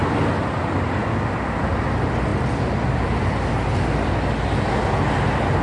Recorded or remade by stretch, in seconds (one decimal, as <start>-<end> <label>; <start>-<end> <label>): 0.0-5.6 recorded